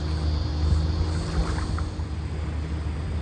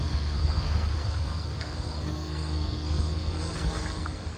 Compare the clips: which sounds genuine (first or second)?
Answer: first